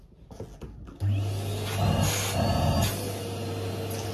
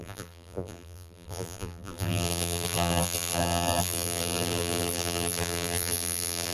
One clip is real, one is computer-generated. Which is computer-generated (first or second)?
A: second